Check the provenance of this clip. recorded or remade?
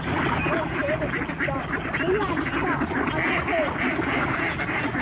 recorded